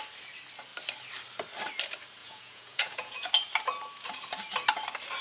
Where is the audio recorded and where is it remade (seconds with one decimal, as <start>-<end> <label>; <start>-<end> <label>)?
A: 0.0-2.2 recorded; 2.2-3.3 remade; 3.3-5.2 recorded